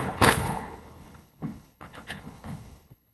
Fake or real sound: fake